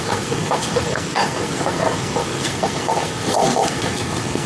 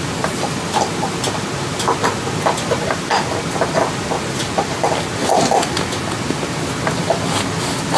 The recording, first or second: second